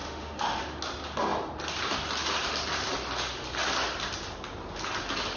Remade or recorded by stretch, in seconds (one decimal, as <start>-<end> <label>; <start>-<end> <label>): 0.0-0.6 remade; 0.6-5.4 recorded